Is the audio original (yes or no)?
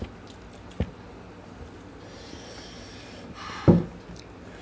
yes